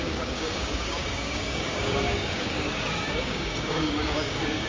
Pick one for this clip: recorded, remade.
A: remade